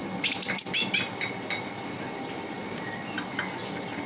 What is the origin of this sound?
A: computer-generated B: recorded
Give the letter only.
B